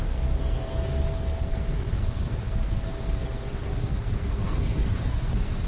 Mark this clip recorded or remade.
remade